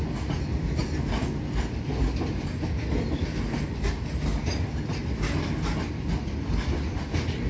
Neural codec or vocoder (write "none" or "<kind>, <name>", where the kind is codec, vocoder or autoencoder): none